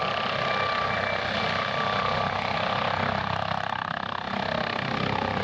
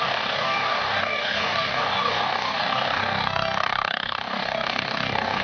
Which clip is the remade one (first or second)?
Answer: second